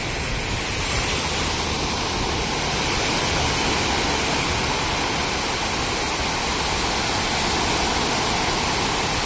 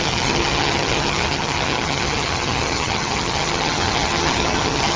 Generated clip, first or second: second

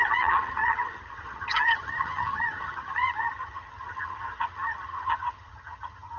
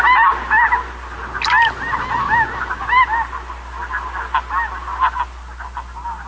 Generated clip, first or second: first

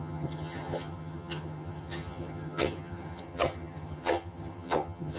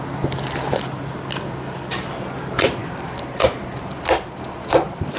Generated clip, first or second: first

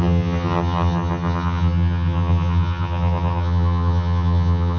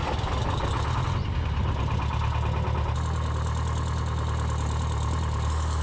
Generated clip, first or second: first